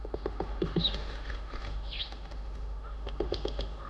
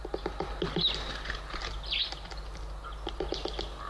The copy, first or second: first